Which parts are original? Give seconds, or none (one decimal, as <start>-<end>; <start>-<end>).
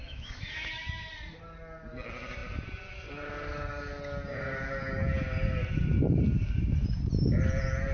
1.1-7.9